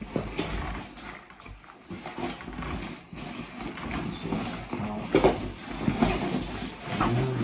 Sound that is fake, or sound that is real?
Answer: real